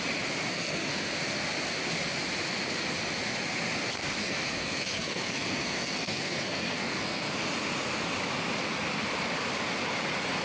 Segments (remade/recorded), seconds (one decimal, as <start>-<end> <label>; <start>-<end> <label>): 0.0-0.5 recorded; 0.5-1.1 remade; 1.1-4.2 recorded; 4.2-7.3 remade; 7.3-10.4 recorded